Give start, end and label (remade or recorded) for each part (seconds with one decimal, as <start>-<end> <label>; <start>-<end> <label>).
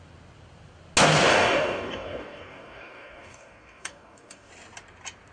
0.0-1.3 recorded; 1.3-4.5 remade; 4.5-5.3 recorded